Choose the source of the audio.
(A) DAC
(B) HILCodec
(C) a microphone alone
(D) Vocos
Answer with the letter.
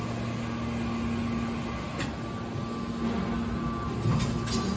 C